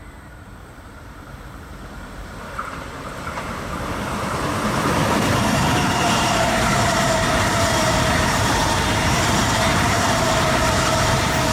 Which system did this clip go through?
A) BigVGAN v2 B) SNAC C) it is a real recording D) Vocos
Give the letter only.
A